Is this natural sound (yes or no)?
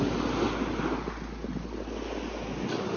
yes